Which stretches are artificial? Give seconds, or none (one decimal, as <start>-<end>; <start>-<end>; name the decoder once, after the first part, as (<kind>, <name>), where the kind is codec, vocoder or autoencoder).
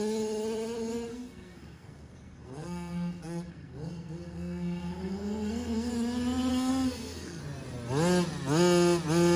1.1-5.9 (codec, SNAC); 6.5-7.4